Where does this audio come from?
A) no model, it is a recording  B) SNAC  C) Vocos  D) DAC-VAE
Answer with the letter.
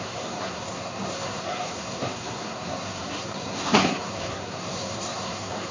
B